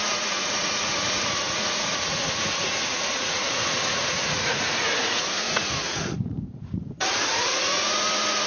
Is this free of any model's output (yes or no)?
no